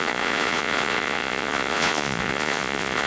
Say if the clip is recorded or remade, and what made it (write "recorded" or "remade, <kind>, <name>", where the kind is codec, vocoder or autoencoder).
remade, vocoder, Vocos